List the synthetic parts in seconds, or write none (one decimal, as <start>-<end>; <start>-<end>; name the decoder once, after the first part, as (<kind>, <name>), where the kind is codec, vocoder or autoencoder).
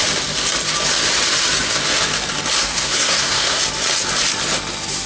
2.6-3.6 (codec, SNAC)